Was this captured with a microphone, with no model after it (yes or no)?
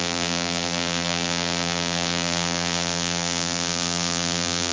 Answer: no